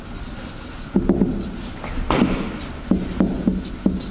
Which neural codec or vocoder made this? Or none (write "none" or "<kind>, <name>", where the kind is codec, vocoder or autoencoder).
none